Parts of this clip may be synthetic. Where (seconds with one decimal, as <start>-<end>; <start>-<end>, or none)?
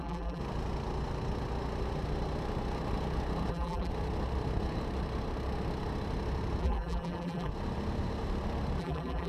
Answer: 0.0-0.4; 3.5-3.9; 6.6-7.5; 8.8-9.3